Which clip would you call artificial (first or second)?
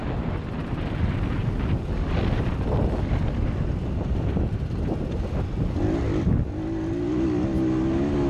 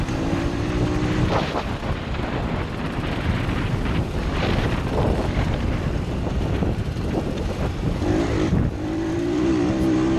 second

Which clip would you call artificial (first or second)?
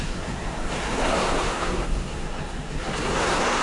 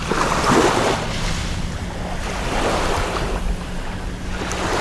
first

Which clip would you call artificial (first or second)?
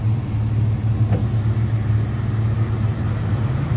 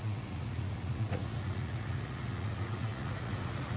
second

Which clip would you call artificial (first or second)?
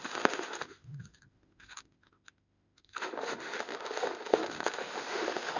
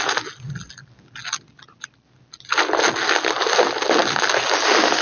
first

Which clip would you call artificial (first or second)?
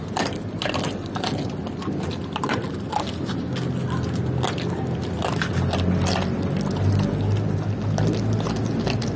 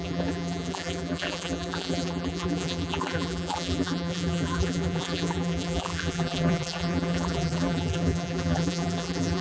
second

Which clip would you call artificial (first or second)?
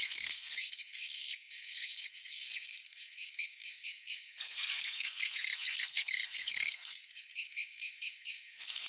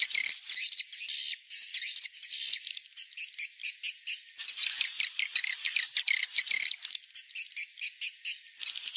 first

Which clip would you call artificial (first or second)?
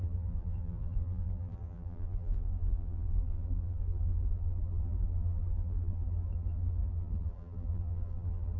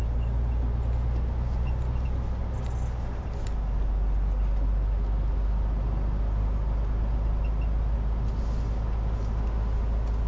first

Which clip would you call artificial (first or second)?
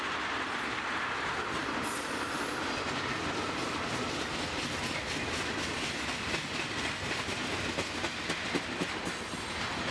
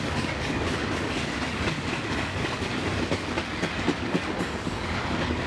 second